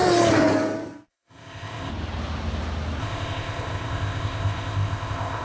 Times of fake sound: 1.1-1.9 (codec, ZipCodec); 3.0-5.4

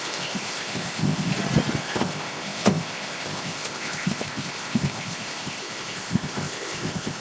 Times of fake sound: 0.0-1.3 (codec, ZipCodec); 1.8-7.2